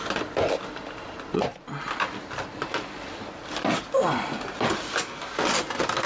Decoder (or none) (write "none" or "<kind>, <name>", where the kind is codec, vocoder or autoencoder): none